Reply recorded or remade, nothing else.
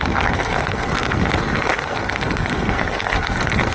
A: remade